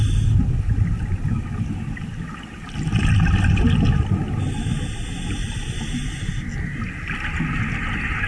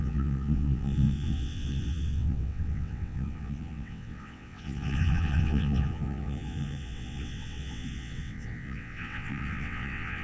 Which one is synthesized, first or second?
second